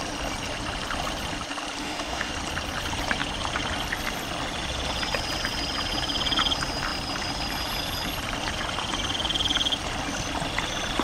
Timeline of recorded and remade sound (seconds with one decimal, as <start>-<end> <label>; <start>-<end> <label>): 0.0-1.8 recorded; 1.8-2.3 remade; 2.3-11.0 recorded